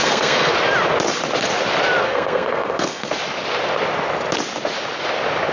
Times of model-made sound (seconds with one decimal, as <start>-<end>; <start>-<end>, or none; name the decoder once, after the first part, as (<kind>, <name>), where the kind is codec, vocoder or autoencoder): 0.0-0.5 (codec, SNAC); 2.0-3.1